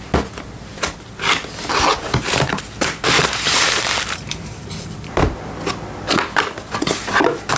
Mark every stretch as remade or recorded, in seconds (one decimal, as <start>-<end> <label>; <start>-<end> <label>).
0.0-1.9 recorded; 1.9-5.5 remade; 5.5-7.6 recorded